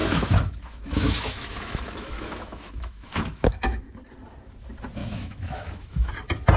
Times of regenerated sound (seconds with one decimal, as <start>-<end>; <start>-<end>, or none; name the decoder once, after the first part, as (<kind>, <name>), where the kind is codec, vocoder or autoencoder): 0.0-4.0 (autoencoder, DAC-VAE); 5.0-6.1